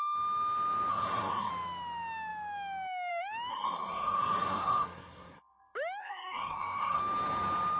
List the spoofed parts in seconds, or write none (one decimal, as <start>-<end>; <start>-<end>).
0.9-1.5; 3.5-5.4; 6.0-7.0